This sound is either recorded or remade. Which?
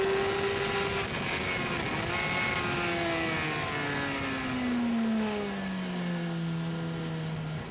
recorded